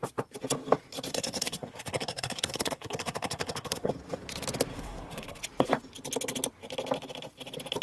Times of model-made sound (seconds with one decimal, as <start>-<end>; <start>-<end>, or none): 1.1-3.9; 4.7-5.4